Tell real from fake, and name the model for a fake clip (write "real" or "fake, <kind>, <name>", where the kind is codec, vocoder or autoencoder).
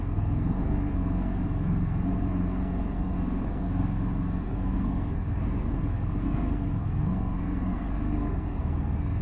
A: fake, codec, SNAC